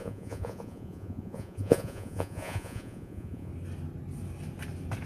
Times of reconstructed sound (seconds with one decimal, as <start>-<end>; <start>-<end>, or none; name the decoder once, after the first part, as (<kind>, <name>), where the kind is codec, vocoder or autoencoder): 0.0-3.5 (vocoder, Vocos)